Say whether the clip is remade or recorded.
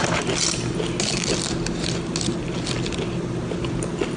recorded